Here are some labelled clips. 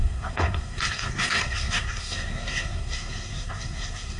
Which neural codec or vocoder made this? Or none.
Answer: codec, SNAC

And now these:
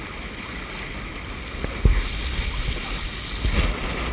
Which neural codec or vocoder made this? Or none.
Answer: none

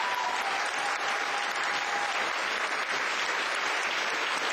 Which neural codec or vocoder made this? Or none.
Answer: none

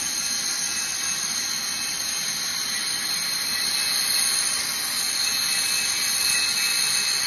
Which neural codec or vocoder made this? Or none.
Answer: none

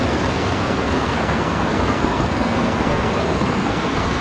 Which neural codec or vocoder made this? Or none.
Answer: codec, SNAC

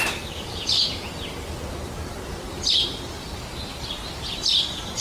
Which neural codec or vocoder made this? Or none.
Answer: none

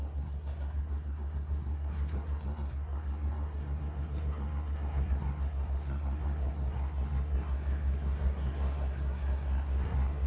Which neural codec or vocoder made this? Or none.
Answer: codec, SNAC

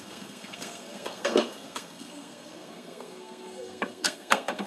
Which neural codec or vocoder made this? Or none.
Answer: codec, SNAC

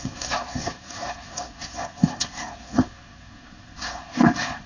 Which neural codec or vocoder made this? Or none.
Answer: codec, SNAC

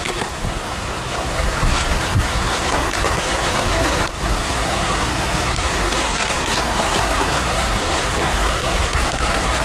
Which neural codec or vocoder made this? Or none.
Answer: codec, SNAC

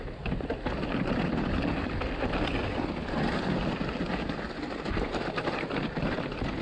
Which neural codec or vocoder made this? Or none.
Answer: none